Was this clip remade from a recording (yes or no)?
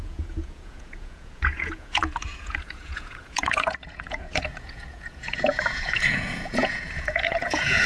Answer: yes